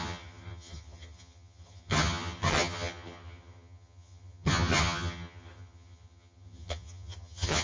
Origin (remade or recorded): remade